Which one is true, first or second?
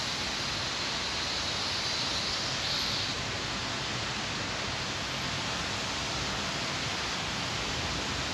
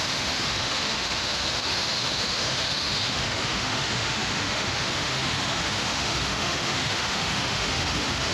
first